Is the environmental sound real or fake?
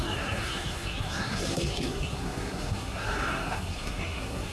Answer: fake